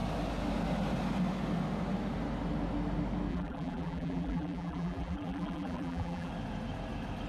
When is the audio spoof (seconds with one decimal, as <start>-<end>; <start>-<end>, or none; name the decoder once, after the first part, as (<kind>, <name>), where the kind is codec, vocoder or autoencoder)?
3.3-6.3 (vocoder, BigVGAN v2)